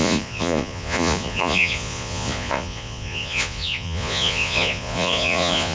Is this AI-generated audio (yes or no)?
yes